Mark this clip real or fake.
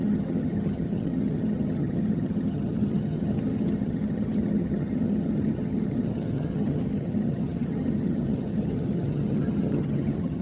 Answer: fake